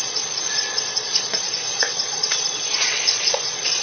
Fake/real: fake